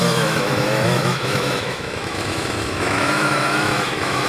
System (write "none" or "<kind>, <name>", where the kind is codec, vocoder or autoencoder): autoencoder, DAC-VAE